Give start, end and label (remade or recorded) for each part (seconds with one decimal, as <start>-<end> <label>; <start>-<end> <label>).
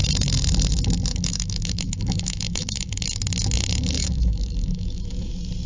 0.0-1.1 recorded; 1.1-3.0 remade; 3.0-4.0 recorded; 4.0-5.3 remade; 5.3-5.7 recorded